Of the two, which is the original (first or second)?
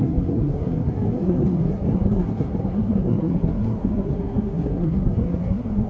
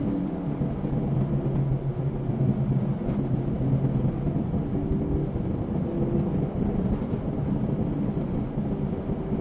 second